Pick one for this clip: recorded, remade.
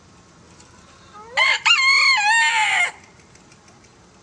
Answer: recorded